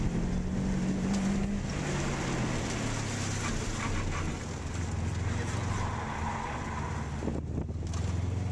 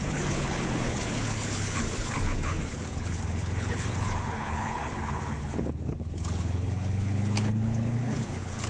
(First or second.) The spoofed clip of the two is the second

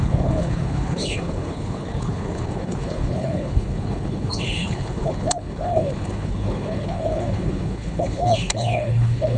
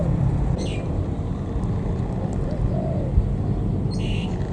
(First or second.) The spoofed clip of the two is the first